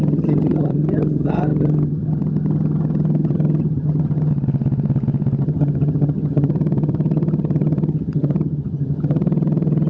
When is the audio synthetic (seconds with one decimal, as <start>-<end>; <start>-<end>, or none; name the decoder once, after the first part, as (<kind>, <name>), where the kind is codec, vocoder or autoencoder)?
0.0-4.3 (vocoder, HiFi-GAN); 5.4-9.9